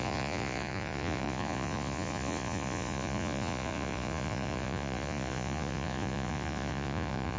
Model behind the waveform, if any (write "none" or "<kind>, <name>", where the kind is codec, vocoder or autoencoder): vocoder, Vocos